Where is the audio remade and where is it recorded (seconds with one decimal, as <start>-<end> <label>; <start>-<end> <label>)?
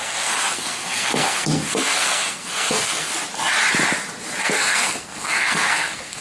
0.0-3.1 remade; 3.1-4.4 recorded; 4.4-6.2 remade